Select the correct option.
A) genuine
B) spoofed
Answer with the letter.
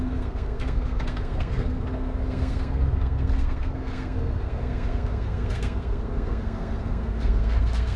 B